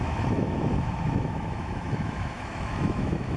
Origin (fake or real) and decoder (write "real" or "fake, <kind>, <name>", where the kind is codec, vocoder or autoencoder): fake, autoencoder, DAC-VAE